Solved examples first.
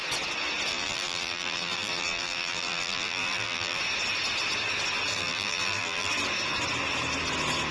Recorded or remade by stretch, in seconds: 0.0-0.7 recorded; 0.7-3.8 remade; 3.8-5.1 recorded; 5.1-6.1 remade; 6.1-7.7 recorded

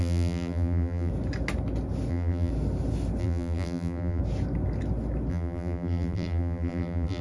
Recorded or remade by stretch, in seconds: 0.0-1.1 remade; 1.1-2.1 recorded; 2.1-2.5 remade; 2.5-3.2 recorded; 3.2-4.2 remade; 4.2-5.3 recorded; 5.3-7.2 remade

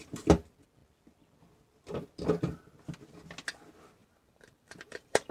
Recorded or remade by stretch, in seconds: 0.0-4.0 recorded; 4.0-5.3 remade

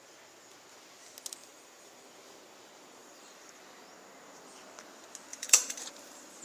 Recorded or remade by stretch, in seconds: 0.0-1.4 recorded; 1.4-2.0 remade; 2.0-3.0 recorded; 3.0-3.6 remade; 3.6-5.3 recorded; 5.3-6.4 remade

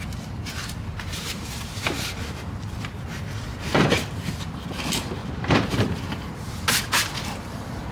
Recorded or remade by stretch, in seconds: 0.0-0.9 recorded; 0.9-3.1 remade; 3.1-5.2 recorded; 5.2-7.9 remade

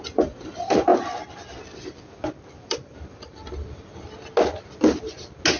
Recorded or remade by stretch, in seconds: 0.0-0.9 recorded; 0.9-3.5 remade; 3.5-5.6 recorded

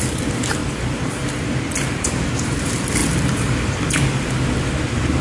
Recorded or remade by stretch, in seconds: 0.0-0.6 remade; 0.6-2.0 recorded; 2.0-5.2 remade

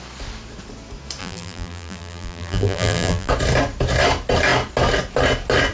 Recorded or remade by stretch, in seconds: 0.0-1.2 recorded; 1.2-3.3 remade; 3.3-5.7 recorded